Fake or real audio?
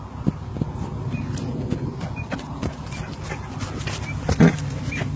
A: real